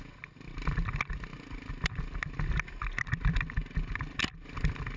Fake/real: real